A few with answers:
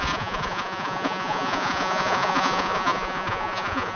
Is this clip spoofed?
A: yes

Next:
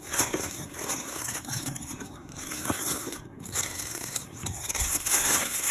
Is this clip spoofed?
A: yes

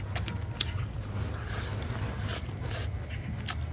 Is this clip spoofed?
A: no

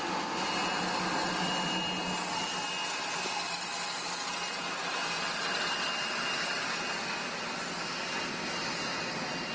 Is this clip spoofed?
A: no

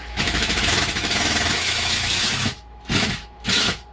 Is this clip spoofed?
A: yes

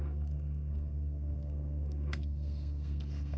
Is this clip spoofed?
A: yes